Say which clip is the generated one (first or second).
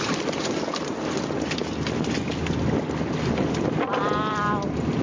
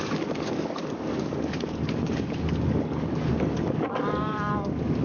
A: second